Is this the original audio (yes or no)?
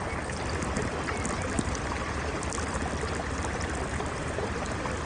yes